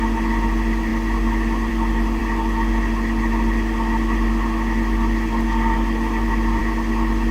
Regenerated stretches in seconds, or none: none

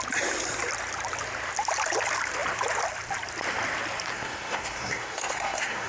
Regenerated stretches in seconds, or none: 4.1-5.9 (codec, SNAC)

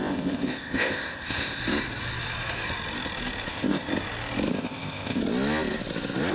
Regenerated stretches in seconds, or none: 0.0-1.6 (codec, ZipCodec); 3.5-3.9; 4.5-5.2

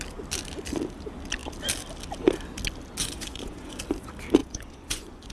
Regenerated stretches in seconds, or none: 3.0-3.8 (vocoder, Vocos); 4.4-5.3

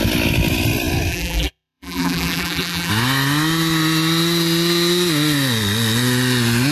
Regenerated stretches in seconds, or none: 1.1-2.9 (vocoder, BigVGAN v2)